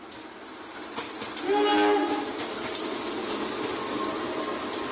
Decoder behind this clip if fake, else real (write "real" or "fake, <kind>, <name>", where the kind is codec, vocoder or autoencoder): real